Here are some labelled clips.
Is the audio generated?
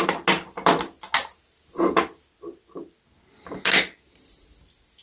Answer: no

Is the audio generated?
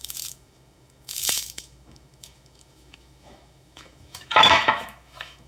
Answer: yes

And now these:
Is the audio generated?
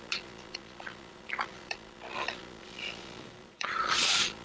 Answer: yes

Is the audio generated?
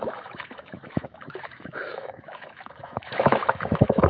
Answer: yes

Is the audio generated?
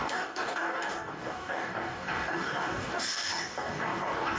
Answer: yes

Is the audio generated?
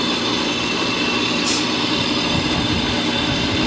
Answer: yes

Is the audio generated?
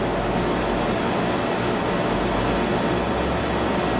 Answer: no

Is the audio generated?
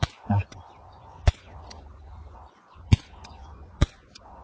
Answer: yes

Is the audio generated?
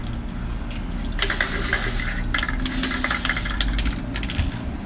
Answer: no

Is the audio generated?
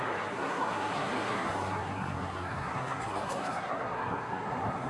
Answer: yes